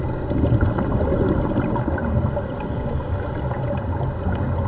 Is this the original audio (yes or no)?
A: yes